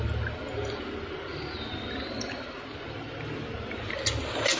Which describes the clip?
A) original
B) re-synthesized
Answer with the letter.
A